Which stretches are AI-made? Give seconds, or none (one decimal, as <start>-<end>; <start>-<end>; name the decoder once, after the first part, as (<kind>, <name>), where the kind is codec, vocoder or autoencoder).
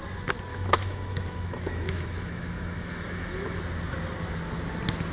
0.5-3.6 (autoencoder, DAC-VAE)